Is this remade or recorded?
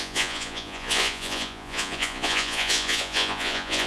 remade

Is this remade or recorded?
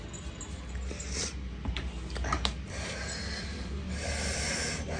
recorded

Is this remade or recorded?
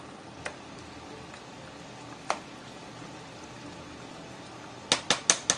recorded